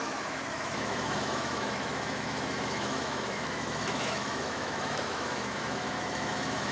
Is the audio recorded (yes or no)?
no